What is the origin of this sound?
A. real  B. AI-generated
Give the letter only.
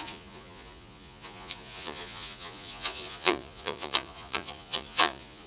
B